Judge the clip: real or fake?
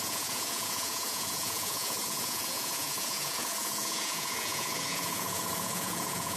fake